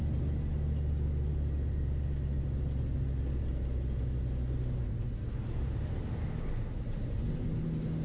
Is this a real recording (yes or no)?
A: yes